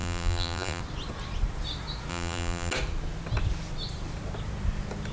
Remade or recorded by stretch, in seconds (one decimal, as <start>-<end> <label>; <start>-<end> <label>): 0.0-0.8 remade; 0.8-2.1 recorded; 2.1-2.7 remade; 2.7-5.1 recorded